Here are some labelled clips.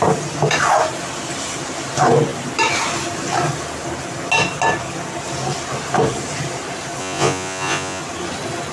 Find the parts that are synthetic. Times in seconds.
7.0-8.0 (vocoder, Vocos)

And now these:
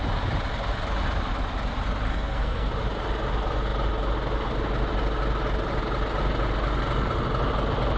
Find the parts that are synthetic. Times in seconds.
2.1-2.7 (codec, SNAC)